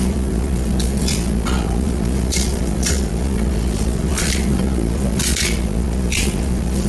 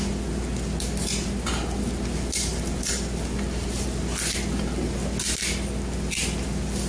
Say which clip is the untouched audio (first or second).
second